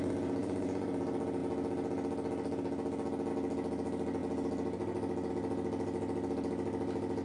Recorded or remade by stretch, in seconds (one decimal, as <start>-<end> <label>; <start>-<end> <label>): 0.0-0.4 recorded; 0.4-0.9 remade; 0.9-7.2 recorded